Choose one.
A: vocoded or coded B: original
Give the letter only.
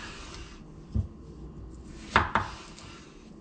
B